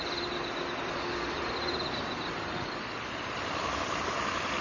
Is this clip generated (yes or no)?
no